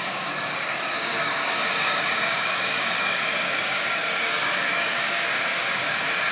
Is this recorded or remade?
remade